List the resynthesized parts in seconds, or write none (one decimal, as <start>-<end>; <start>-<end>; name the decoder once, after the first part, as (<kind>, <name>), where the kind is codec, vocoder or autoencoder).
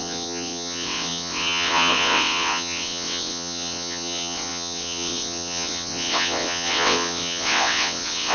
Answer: 0.0-8.3 (vocoder, WaveNeXt)